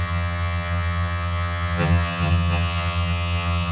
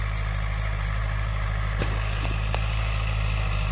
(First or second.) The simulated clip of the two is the first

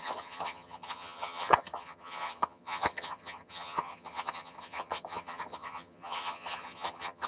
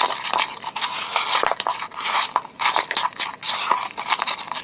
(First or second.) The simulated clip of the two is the first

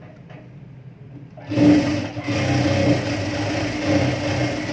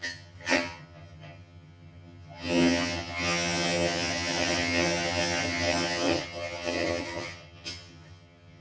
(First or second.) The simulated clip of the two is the second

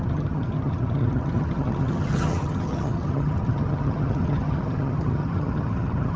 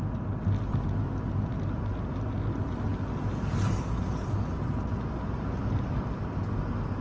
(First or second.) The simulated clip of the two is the first